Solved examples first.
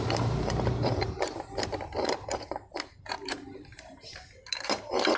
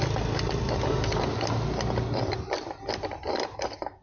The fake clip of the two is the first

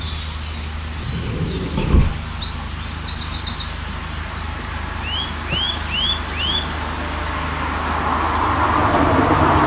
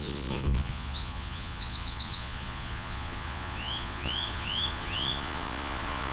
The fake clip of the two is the second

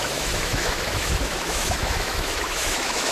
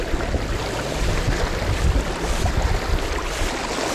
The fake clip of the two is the first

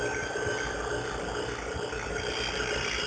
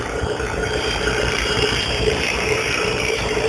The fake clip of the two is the second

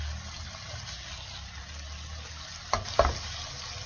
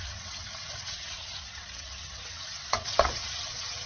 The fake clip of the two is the second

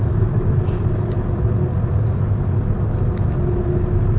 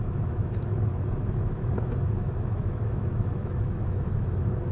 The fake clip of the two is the second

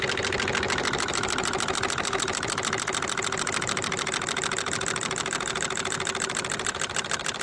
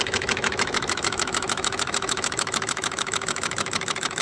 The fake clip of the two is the second